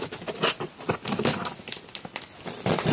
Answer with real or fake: real